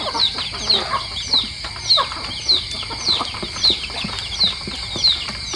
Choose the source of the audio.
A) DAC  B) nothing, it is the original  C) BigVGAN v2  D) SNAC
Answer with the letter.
B